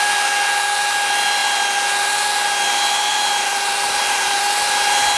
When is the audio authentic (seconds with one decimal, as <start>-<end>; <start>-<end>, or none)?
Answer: 0.0-3.1; 4.4-5.2